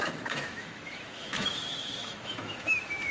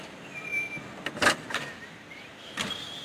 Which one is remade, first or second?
first